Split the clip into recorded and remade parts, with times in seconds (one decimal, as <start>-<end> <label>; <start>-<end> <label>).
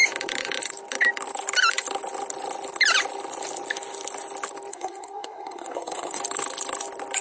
0.0-4.7 recorded; 4.7-6.2 remade; 6.2-7.2 recorded